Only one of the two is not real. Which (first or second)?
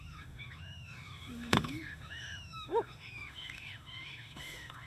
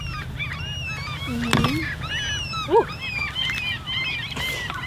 first